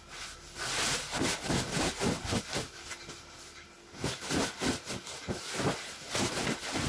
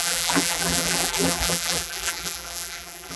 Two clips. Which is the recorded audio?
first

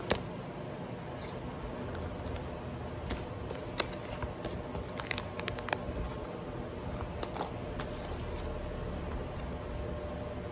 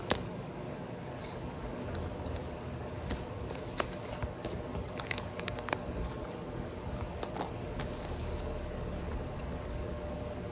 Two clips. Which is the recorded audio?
first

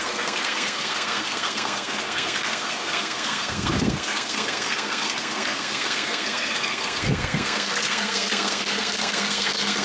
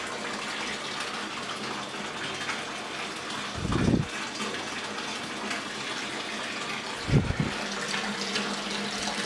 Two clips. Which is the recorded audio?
second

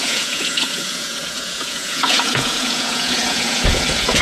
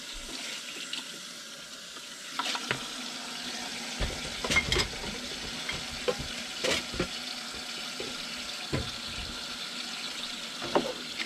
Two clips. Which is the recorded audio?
second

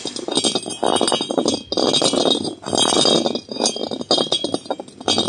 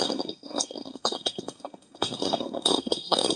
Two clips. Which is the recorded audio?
first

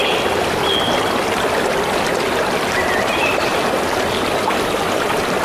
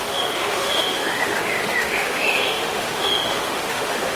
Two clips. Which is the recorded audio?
first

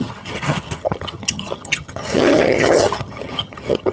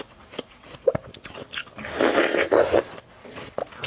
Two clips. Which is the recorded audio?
second